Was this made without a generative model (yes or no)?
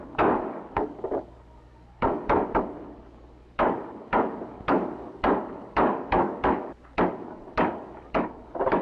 no